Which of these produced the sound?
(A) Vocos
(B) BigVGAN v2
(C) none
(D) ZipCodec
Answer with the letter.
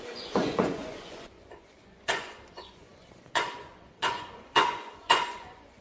A